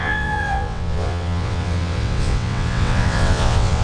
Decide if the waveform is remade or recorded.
remade